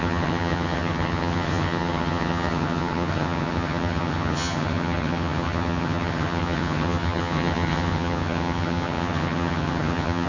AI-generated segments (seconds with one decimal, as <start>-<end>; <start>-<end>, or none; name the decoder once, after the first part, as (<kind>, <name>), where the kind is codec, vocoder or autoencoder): 0.0-10.3 (vocoder, HiFi-GAN)